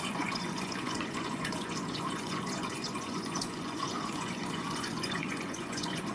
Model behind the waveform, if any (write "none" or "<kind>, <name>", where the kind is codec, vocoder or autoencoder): vocoder, Vocos